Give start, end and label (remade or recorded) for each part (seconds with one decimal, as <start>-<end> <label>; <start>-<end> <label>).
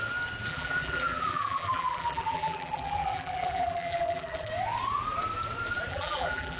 0.0-0.5 recorded; 0.5-4.5 remade; 4.5-5.9 recorded; 5.9-6.6 remade